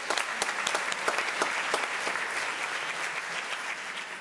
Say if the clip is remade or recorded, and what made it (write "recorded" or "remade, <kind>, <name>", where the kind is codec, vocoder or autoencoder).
recorded